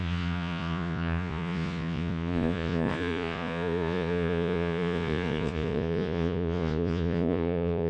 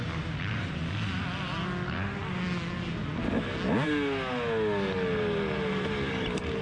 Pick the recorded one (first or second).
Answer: second